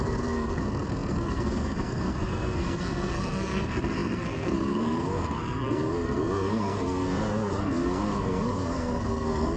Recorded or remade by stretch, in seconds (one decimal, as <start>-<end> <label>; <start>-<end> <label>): 0.0-9.6 remade